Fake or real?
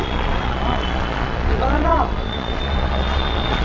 fake